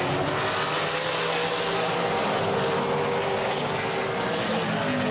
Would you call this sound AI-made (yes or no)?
no